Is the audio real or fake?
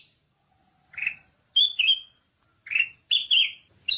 real